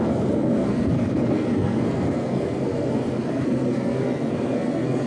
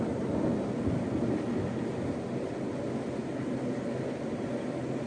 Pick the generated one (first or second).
first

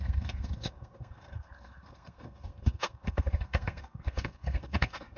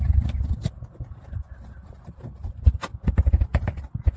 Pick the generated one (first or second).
first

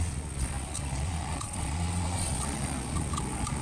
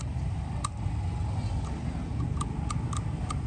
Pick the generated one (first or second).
first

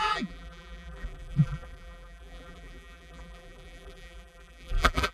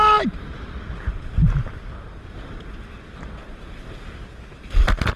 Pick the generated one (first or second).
first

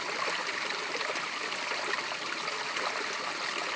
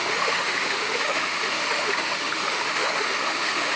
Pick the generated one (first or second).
second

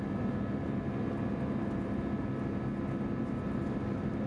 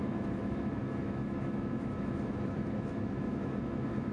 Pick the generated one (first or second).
second